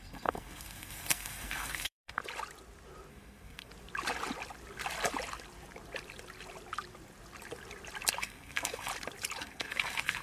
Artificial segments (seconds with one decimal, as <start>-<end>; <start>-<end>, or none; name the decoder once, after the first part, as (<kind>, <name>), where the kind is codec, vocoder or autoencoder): 0.0-2.2 (codec, SNAC); 3.1-3.7; 8.2-8.9; 9.4-10.2